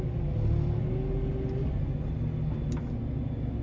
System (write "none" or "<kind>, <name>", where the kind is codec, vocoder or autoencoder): none